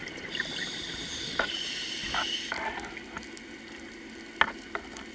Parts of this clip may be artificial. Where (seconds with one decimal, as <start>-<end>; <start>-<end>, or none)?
0.0-2.1